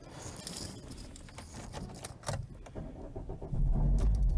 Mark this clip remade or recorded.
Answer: recorded